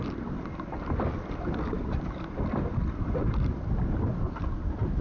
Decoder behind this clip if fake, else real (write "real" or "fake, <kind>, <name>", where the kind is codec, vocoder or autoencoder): real